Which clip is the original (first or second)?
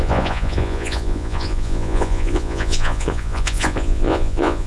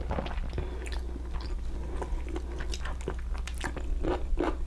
second